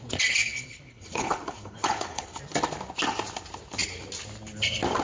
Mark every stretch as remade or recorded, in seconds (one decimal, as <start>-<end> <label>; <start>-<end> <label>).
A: 0.0-0.4 recorded; 0.4-2.4 remade; 2.4-5.0 recorded

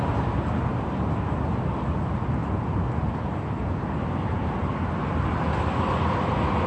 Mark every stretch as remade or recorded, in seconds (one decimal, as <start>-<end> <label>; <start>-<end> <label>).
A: 0.0-6.7 recorded